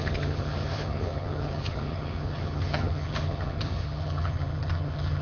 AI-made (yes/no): yes